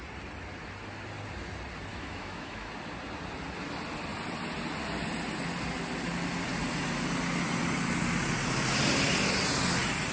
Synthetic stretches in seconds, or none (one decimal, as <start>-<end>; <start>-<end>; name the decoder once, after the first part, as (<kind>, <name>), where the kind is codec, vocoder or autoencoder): 1.9-2.7 (autoencoder, DAC-VAE)